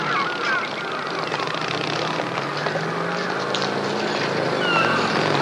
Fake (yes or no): no